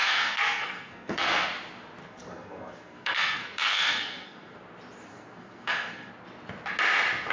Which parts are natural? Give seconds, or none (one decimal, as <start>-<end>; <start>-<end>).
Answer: 1.5-2.0; 4.6-5.1; 6.1-7.3